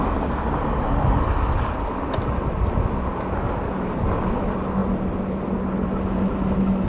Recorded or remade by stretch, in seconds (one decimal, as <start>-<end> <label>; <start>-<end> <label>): 0.0-6.9 recorded